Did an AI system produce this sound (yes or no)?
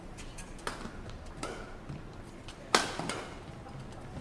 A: no